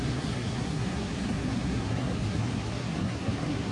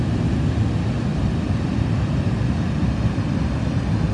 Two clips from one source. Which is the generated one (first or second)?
first